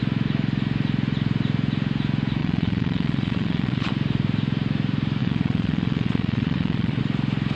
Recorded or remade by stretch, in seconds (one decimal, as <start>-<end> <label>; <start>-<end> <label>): 0.0-2.4 recorded; 2.4-3.9 remade; 3.9-5.2 recorded; 5.2-7.0 remade; 7.0-7.6 recorded